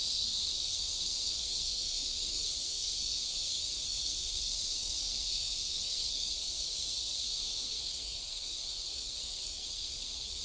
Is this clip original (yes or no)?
no